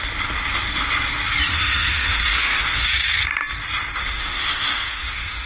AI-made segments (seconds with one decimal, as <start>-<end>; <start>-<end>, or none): 1.5-2.9; 4.0-5.5

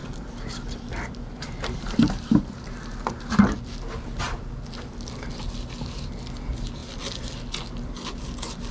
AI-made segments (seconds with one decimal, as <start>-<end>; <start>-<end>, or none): 0.0-2.4

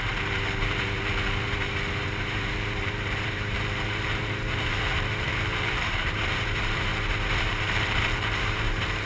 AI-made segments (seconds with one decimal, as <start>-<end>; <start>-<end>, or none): 0.0-6.9; 7.4-9.1

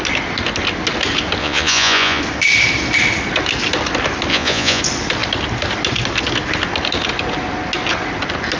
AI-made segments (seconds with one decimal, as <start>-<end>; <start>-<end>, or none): 1.4-2.2; 4.3-4.8

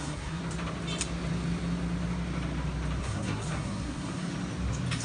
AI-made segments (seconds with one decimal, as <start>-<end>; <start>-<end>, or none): 0.0-0.4; 3.0-4.3

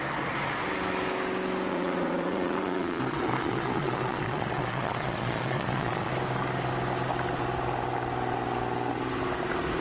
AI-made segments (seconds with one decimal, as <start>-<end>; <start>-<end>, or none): 1.7-6.1

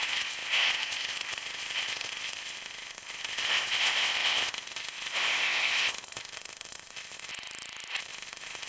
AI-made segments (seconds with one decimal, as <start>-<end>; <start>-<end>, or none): 0.0-7.3; 8.0-8.7

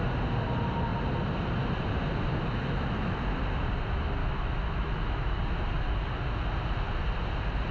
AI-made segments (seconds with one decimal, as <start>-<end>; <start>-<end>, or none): 2.3-3.2; 4.2-5.4